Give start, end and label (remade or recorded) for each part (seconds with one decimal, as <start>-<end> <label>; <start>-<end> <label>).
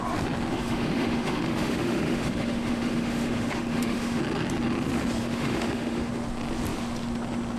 0.0-0.5 recorded; 0.5-4.2 remade; 4.2-5.2 recorded; 5.2-6.1 remade; 6.1-7.6 recorded